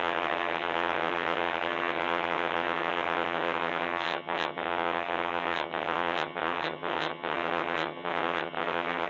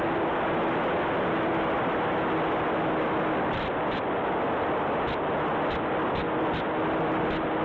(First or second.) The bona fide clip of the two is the second